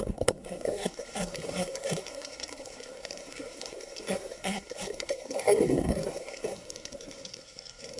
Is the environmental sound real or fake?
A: fake